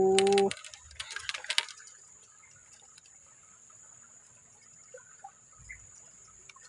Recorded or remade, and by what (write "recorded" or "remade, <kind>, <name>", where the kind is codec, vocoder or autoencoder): recorded